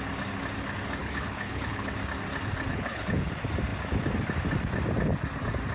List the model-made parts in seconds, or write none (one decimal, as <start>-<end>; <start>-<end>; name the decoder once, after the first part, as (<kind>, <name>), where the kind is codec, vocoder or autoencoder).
1.0-1.9 (codec, HILCodec); 2.7-3.3